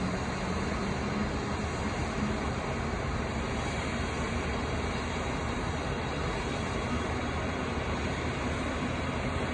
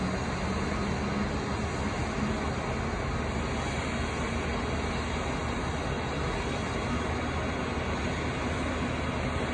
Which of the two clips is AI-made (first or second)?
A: first